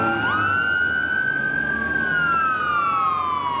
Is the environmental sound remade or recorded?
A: recorded